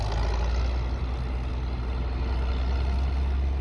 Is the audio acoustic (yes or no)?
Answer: yes